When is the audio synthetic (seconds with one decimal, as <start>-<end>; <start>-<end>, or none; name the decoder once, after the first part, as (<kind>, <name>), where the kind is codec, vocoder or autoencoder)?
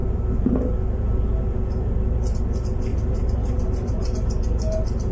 2.9-4.3 (vocoder, BigVGAN v2)